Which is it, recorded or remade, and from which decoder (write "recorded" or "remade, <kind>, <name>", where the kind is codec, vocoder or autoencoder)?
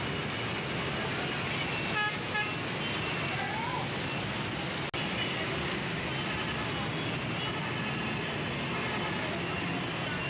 recorded